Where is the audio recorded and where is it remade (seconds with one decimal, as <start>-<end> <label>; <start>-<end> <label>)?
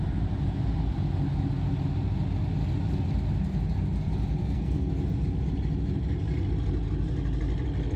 0.0-4.4 recorded; 4.4-4.9 remade; 4.9-8.0 recorded